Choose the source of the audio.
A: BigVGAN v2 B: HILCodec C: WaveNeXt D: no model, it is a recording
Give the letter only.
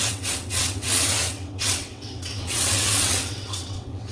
C